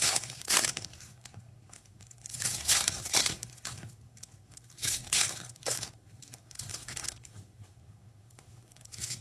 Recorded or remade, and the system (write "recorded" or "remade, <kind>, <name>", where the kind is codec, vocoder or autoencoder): remade, codec, SNAC